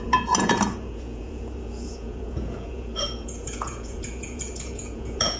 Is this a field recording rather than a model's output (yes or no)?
no